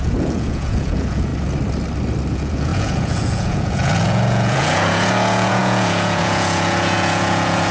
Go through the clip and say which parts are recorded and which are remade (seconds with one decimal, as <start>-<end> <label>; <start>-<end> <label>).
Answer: 0.0-1.3 remade; 1.3-2.3 recorded; 2.3-7.7 remade